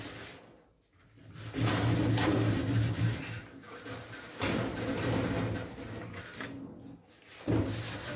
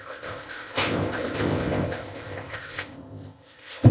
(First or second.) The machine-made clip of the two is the second